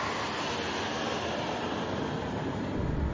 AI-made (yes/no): no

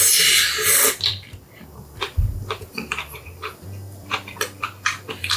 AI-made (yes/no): yes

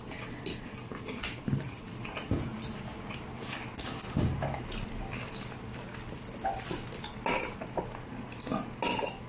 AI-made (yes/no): no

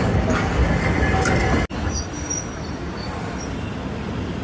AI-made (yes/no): no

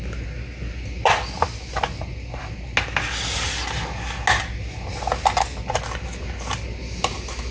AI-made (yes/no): no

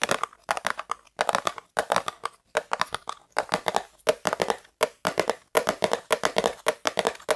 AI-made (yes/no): no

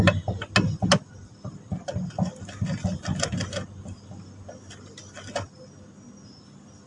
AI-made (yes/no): no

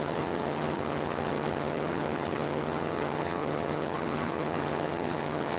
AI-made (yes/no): yes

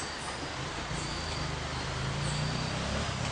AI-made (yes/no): no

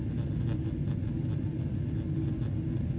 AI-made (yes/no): no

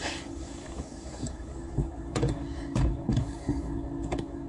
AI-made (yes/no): yes